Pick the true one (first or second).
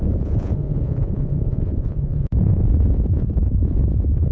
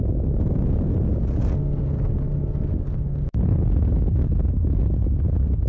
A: second